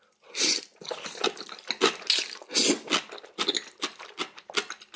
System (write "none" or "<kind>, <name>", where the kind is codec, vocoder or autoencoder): none